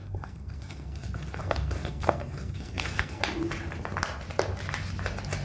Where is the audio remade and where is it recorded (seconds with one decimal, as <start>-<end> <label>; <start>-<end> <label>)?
0.0-3.2 remade; 3.2-5.4 recorded